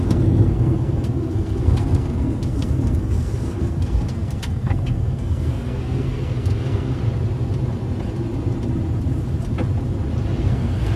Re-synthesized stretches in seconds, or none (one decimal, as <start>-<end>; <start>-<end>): 0.0-7.0; 10.4-11.0